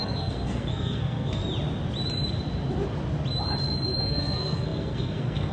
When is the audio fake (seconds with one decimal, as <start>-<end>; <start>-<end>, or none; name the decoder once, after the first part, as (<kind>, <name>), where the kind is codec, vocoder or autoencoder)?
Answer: 0.0-1.4 (codec, SNAC); 4.0-5.5